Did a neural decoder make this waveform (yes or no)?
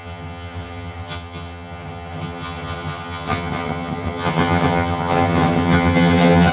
yes